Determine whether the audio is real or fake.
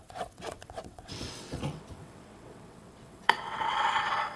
fake